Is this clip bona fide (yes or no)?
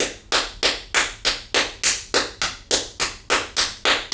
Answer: yes